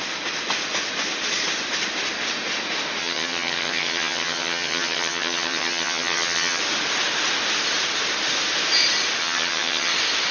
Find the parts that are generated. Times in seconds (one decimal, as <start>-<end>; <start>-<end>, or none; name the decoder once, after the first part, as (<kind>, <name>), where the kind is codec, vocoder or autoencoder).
3.0-6.6 (vocoder, HiFi-GAN); 9.2-9.9